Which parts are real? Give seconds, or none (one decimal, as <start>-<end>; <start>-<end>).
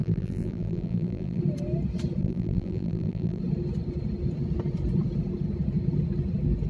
1.4-2.2; 3.4-6.7